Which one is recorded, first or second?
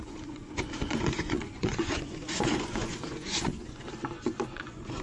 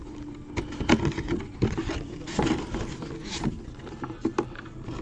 second